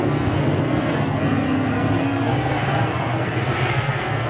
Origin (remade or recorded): remade